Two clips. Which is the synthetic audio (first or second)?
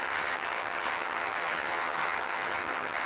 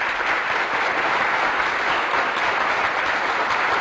first